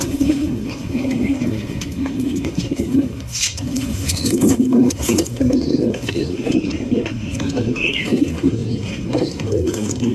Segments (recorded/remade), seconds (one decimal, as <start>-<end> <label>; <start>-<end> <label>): 0.0-10.1 remade